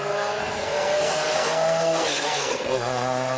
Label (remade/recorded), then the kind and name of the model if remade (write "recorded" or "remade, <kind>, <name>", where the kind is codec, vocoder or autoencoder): remade, codec, SNAC